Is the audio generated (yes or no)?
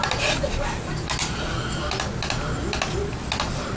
no